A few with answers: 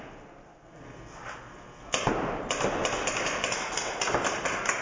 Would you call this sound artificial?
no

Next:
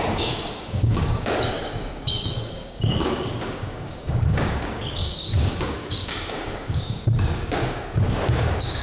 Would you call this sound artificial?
yes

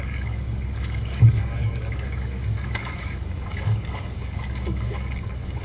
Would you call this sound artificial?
yes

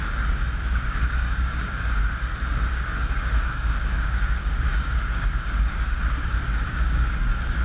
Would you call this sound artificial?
yes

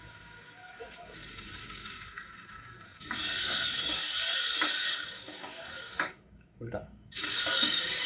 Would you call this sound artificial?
yes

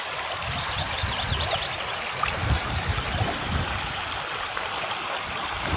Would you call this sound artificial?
no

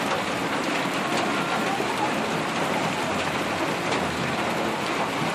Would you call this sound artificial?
no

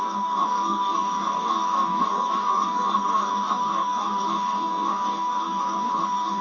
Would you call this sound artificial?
yes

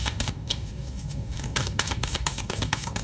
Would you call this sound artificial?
yes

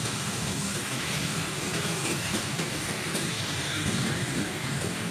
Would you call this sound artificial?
yes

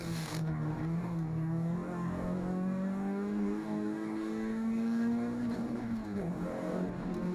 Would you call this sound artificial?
yes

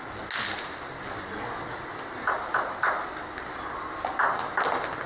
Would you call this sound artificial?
no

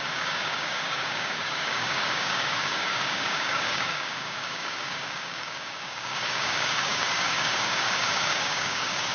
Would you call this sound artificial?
yes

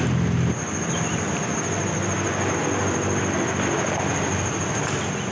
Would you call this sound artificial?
no